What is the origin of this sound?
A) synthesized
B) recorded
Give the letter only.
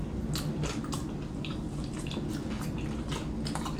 B